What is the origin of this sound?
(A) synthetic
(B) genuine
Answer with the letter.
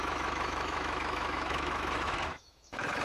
A